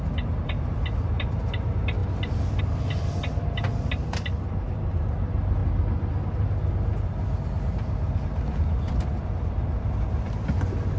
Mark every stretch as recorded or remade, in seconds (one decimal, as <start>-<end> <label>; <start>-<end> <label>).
0.0-11.0 recorded